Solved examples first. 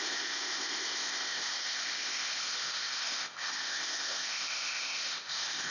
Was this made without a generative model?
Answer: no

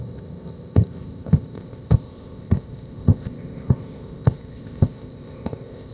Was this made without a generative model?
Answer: no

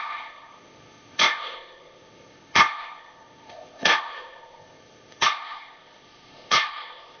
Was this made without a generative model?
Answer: no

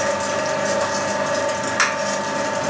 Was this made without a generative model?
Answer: yes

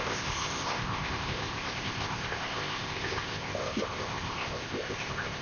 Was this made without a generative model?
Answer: no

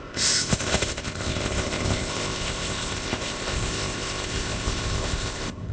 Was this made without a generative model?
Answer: no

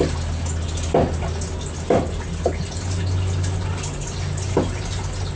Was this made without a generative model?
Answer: yes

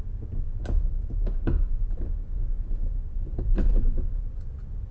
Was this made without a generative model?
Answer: yes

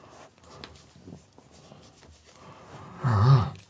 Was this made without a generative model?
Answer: yes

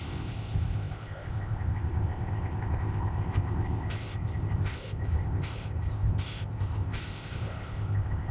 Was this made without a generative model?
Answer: no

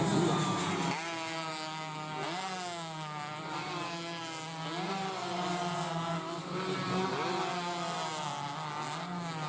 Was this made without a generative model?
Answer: yes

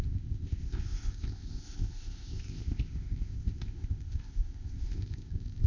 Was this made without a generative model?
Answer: no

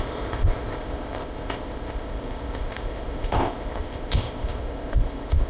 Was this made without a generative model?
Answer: no